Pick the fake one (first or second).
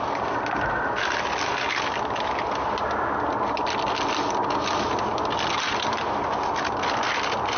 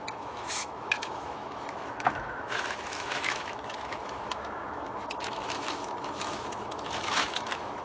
second